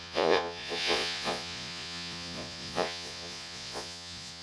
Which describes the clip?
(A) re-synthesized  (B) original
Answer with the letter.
A